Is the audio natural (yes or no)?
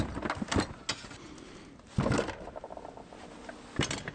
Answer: yes